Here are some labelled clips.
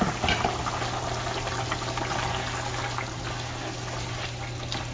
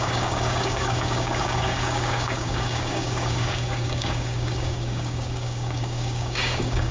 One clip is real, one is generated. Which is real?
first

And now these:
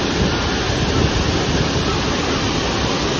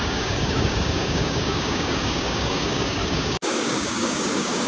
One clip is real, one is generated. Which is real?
first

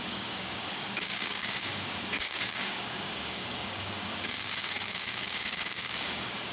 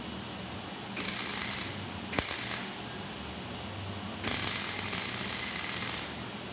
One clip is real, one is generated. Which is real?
second